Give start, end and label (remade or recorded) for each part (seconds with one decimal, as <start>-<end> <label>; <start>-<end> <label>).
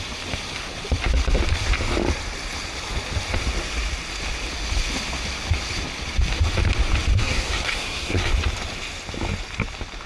0.0-7.2 recorded; 7.2-8.3 remade; 8.3-10.1 recorded